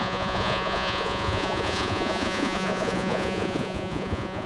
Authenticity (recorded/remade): remade